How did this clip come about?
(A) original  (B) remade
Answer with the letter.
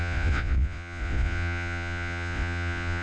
B